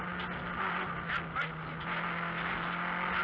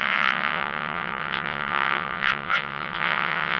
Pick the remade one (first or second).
second